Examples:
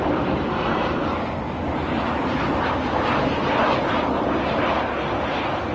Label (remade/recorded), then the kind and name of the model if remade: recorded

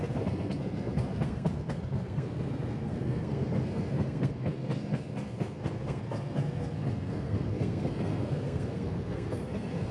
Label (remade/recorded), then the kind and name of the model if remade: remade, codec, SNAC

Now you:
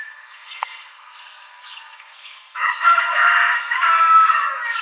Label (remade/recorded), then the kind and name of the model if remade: remade, codec, SNAC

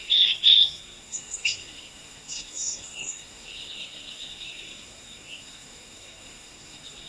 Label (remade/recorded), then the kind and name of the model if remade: remade, codec, SNAC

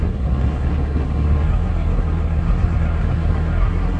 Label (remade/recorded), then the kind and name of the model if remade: remade, codec, SNAC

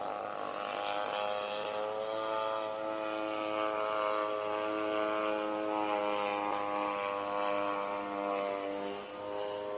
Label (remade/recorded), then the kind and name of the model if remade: recorded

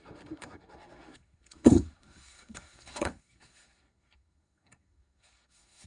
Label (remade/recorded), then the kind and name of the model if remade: remade, codec, SNAC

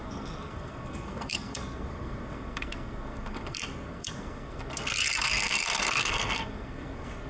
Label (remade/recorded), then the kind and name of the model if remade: remade, codec, SNAC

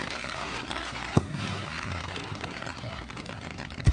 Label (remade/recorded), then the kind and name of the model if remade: remade, codec, SNAC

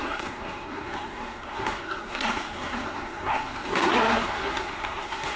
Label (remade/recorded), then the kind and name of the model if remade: remade, codec, SNAC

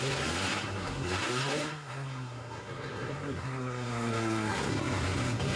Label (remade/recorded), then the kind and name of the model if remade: remade, codec, SNAC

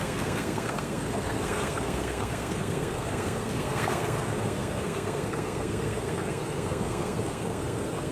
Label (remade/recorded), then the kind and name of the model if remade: remade, codec, SNAC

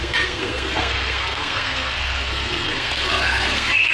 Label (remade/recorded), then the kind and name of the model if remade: remade, codec, SNAC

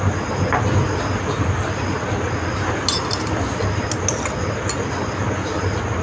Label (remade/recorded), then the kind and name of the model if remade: recorded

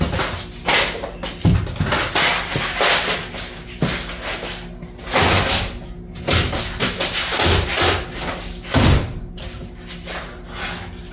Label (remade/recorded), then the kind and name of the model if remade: recorded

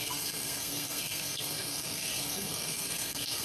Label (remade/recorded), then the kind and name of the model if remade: remade, codec, SNAC